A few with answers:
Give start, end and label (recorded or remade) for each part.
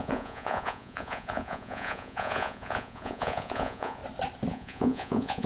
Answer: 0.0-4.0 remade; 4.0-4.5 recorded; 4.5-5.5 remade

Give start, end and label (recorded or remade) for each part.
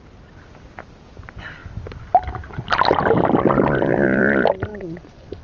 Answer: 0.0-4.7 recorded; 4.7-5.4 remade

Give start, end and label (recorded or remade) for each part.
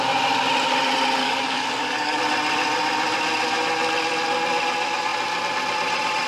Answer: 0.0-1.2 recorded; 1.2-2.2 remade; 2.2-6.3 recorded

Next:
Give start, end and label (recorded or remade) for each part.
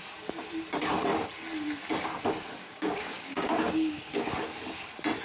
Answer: 0.0-2.6 recorded; 2.6-4.3 remade; 4.3-5.2 recorded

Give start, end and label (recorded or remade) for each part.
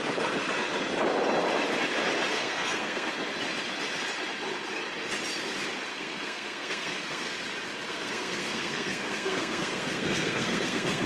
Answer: 0.0-2.3 recorded; 2.3-3.1 remade; 3.1-5.9 recorded; 5.9-7.3 remade; 7.3-7.9 recorded; 7.9-11.1 remade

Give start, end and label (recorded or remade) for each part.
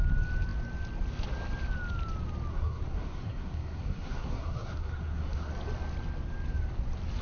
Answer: 0.0-2.5 recorded; 2.5-5.5 remade; 5.5-7.2 recorded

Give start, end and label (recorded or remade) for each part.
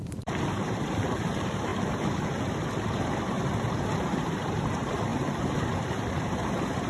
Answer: 0.0-6.9 remade